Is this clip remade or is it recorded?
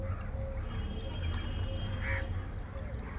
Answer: recorded